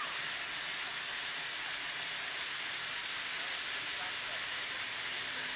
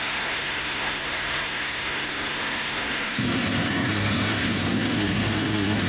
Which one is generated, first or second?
second